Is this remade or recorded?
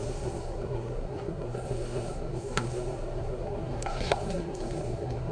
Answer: remade